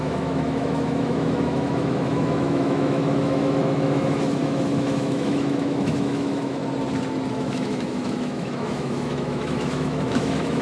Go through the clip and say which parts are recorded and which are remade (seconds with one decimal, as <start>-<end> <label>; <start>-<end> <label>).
0.0-6.6 remade; 6.6-7.3 recorded; 7.3-10.6 remade